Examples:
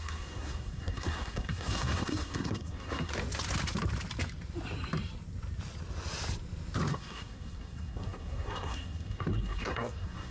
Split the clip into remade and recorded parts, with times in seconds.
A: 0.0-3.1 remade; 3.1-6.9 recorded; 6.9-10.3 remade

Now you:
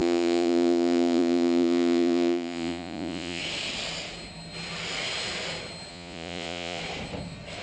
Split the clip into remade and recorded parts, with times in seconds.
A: 0.0-3.4 remade; 3.4-5.9 recorded; 5.9-6.8 remade; 6.8-7.6 recorded

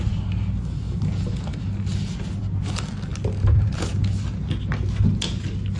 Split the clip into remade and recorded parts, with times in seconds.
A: 0.0-5.8 recorded

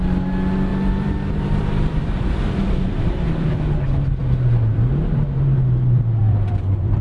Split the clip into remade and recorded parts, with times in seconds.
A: 0.0-0.7 recorded; 0.7-3.6 remade; 3.6-6.2 recorded; 6.2-7.0 remade